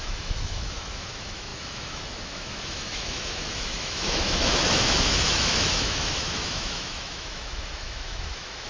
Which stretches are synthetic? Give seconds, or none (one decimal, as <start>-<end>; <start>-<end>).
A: 0.0-8.7

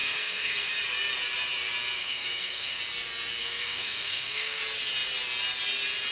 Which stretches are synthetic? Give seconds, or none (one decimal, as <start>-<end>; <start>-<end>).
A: 0.0-0.7; 2.0-2.8; 3.4-4.6

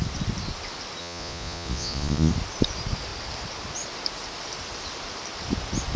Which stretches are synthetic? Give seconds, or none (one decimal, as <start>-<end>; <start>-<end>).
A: 1.0-2.3

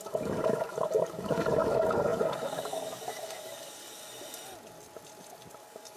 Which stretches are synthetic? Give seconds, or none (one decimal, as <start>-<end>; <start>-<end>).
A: 0.0-4.0; 5.6-6.0